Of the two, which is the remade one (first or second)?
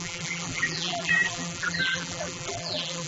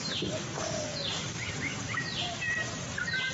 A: first